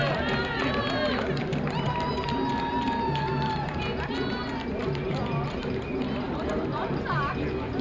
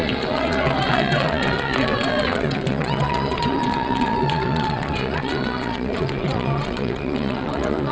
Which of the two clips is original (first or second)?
first